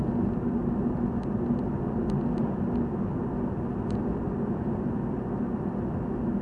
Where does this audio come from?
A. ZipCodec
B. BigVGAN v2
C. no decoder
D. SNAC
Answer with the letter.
C